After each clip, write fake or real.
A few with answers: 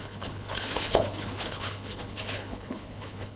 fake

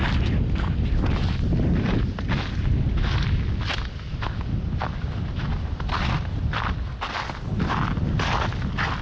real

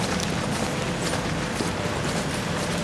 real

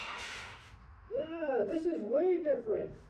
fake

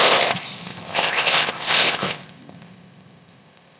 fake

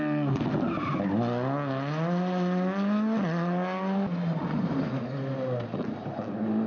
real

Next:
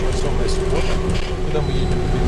real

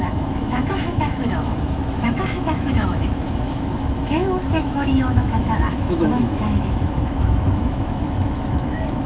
fake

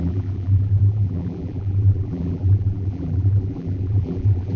fake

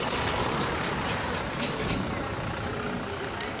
real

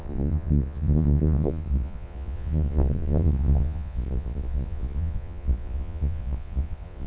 fake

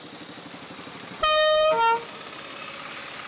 real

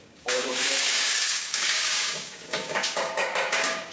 fake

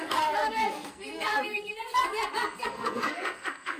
fake